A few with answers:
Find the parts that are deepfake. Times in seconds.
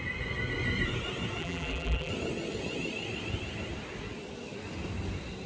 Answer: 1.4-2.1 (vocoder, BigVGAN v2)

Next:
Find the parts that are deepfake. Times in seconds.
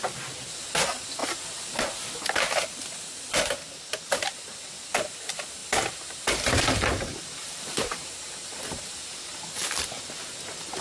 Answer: 5.6-9.4 (vocoder, BigVGAN v2)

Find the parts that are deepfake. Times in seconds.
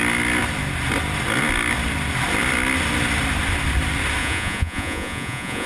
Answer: 4.2-5.7 (vocoder, Vocos)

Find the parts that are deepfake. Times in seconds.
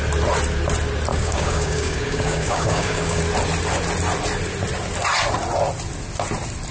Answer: 1.1-3.2 (codec, DAC)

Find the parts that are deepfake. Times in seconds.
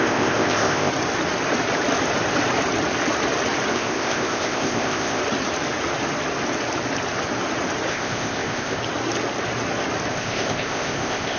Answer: 0.0-0.9 (codec, ZipCodec); 3.7-5.2; 7.9-8.8; 10.1-11.4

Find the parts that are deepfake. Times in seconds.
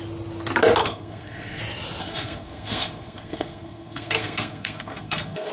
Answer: 0.8-1.6 (codec, SNAC); 2.0-5.5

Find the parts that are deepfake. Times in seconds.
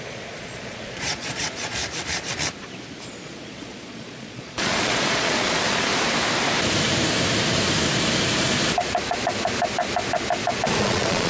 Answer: 0.0-1.8 (vocoder, Vocos); 3.2-5.9; 10.8-11.3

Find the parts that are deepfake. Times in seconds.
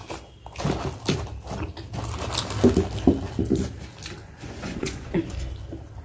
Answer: 4.2-5.2 (vocoder, Vocos)